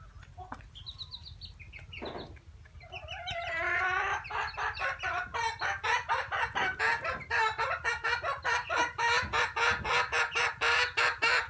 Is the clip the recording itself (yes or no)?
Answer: yes